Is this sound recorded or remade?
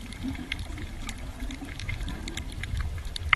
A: remade